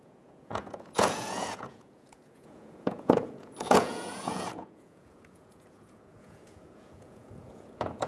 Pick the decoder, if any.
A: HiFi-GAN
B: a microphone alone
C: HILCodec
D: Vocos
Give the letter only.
D